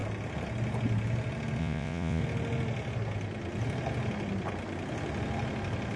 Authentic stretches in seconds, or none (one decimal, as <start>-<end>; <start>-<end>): 0.0-1.6; 2.2-6.0